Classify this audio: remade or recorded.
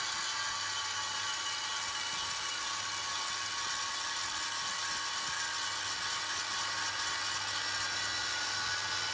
recorded